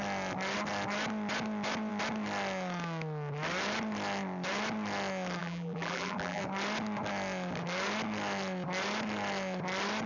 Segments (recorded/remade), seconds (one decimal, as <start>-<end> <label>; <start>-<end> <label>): 0.0-5.4 recorded; 5.4-6.4 remade; 6.4-10.1 recorded